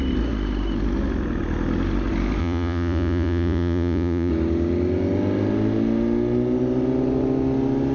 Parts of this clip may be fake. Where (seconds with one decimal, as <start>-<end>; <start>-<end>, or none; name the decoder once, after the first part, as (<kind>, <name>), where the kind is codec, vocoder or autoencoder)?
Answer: 2.4-4.3 (vocoder, Vocos)